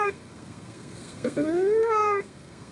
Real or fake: fake